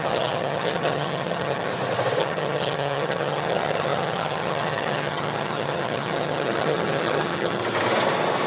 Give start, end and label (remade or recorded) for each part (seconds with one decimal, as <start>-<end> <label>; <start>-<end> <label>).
0.0-1.7 remade; 1.7-2.2 recorded; 2.2-7.6 remade; 7.6-8.5 recorded